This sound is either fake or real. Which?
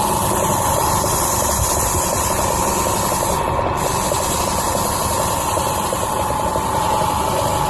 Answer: real